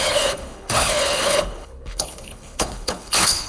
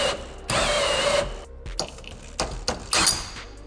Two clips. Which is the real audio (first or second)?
second